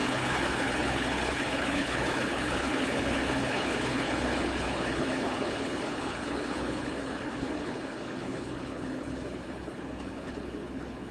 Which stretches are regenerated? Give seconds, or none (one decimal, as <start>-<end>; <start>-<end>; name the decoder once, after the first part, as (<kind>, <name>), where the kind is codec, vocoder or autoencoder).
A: 0.0-11.1 (codec, HILCodec)